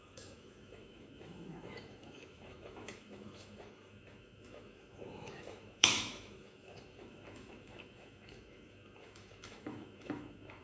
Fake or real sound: fake